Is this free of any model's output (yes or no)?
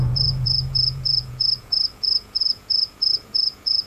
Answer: no